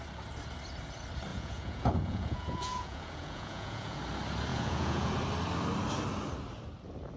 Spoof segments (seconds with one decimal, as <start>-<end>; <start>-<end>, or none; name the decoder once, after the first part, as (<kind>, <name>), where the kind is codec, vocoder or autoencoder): 1.3-4.0 (vocoder, Vocos); 4.5-5.1